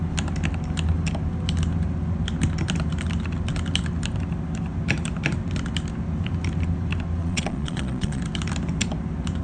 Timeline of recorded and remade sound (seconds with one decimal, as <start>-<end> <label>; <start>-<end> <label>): 0.0-7.2 recorded; 7.2-8.2 remade; 8.2-9.4 recorded